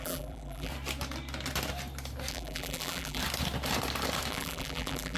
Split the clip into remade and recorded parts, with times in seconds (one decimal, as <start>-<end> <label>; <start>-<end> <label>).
0.0-0.7 remade; 0.7-2.3 recorded; 2.3-3.2 remade; 3.2-4.3 recorded; 4.3-5.2 remade